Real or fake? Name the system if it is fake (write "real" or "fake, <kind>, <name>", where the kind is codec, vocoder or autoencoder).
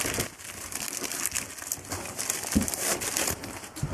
real